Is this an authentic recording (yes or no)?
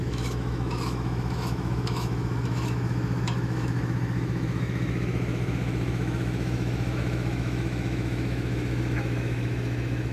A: no